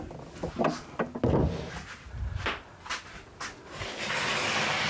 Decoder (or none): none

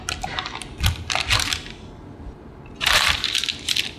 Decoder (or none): none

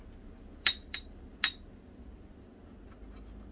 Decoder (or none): none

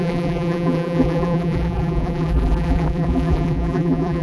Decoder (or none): vocoder, BigVGAN v2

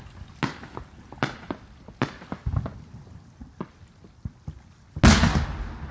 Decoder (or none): none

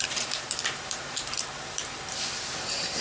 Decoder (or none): vocoder, BigVGAN v2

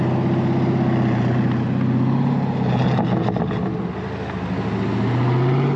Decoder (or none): none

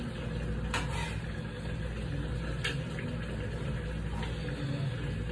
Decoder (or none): none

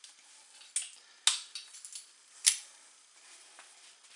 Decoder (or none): none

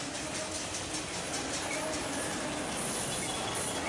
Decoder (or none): none